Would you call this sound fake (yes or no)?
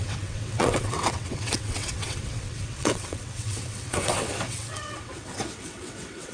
yes